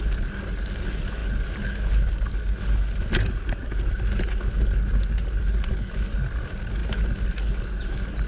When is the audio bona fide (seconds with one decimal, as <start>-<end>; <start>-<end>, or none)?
0.0-8.3